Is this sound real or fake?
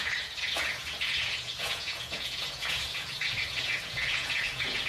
fake